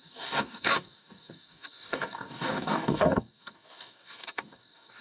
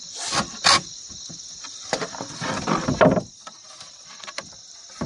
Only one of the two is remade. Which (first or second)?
first